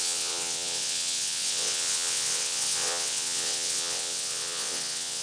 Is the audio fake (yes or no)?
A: yes